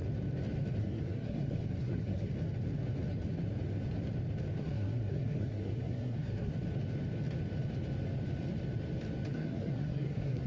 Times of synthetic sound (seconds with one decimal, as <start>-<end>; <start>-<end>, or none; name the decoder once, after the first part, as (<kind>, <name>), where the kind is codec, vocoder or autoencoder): 0.8-2.3 (codec, SNAC); 4.6-6.5; 9.3-10.5